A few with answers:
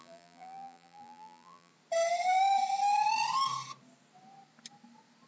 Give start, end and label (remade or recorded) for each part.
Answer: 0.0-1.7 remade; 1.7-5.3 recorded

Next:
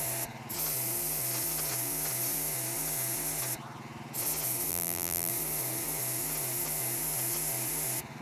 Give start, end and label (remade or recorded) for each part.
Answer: 0.0-4.7 recorded; 4.7-5.3 remade; 5.3-8.2 recorded

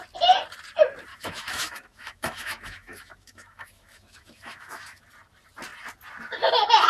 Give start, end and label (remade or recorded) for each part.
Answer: 0.0-1.1 recorded; 1.1-5.0 remade; 5.0-6.9 recorded

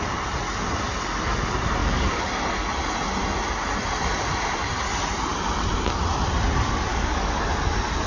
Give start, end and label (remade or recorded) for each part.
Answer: 0.0-1.8 recorded; 1.8-2.3 remade; 2.3-6.9 recorded; 6.9-7.4 remade; 7.4-8.1 recorded

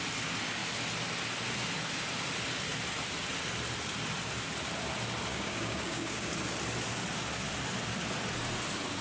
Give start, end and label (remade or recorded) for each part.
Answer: 0.0-5.3 recorded; 5.3-6.3 remade; 6.3-9.0 recorded

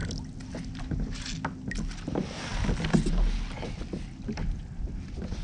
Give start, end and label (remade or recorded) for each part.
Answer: 0.0-5.4 recorded

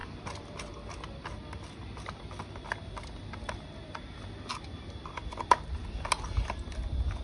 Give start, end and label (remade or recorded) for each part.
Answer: 0.0-7.2 recorded

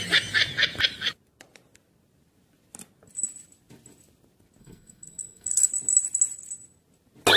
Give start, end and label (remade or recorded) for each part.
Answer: 0.0-4.6 recorded; 4.6-5.7 remade; 5.7-7.4 recorded